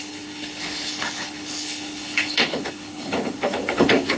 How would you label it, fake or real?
fake